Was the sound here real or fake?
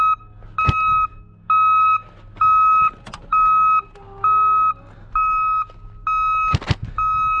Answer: real